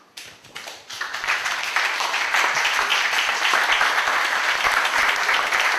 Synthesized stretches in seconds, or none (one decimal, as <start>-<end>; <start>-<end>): 0.0-5.8